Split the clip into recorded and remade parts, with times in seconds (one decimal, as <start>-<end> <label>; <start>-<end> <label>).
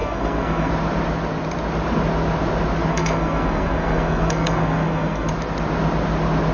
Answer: 0.0-0.7 remade; 0.7-2.9 recorded; 2.9-5.3 remade; 5.3-6.5 recorded